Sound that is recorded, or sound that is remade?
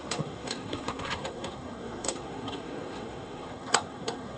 remade